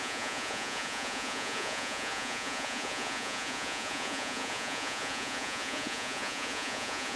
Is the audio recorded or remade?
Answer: remade